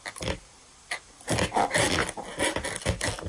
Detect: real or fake real